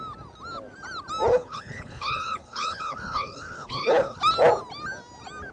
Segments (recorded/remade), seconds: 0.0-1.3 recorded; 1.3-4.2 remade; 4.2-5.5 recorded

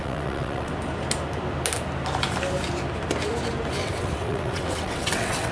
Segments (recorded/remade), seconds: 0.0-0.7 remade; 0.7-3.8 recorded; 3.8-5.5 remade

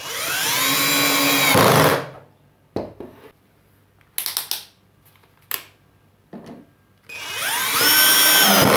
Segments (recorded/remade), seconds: 0.0-8.8 recorded

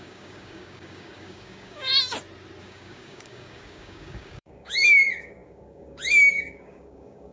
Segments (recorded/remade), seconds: 0.0-1.9 remade; 1.9-2.6 recorded; 2.6-7.3 remade

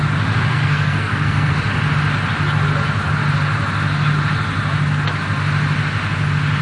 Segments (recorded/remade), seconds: 0.0-0.5 recorded; 0.5-1.5 remade; 1.5-6.6 recorded

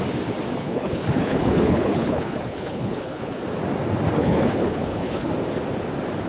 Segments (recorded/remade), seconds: 0.0-0.6 recorded; 0.6-3.4 remade; 3.4-4.1 recorded; 4.1-5.3 remade; 5.3-6.3 recorded

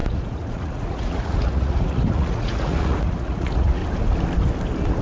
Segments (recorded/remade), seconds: 0.0-3.8 remade; 3.8-5.0 recorded

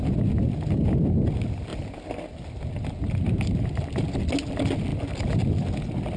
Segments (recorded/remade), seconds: 0.0-6.2 recorded